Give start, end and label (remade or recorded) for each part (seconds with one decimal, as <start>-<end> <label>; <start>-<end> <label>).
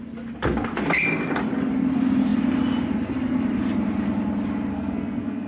0.0-4.7 recorded; 4.7-5.5 remade